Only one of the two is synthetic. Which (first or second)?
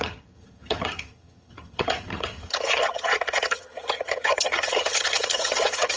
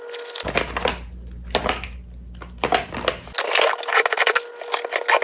first